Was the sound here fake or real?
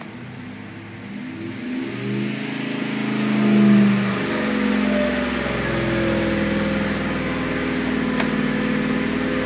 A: real